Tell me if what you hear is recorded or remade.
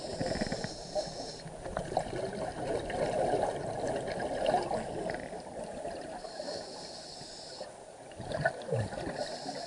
recorded